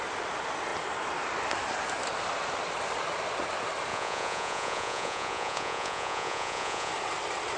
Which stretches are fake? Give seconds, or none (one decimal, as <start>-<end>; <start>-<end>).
3.9-6.9